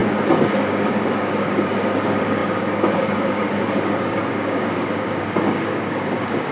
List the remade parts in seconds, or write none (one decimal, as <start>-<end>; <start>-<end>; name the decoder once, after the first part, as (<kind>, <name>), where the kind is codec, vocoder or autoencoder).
0.0-6.5 (codec, DAC)